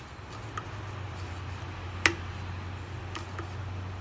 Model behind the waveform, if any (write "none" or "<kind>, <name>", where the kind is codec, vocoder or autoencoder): none